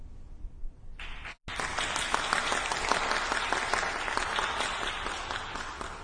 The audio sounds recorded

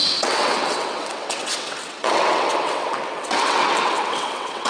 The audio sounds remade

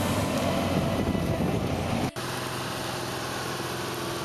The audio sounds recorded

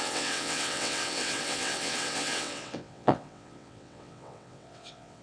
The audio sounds remade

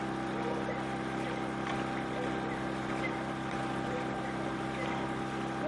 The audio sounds recorded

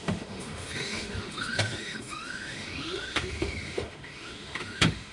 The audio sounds remade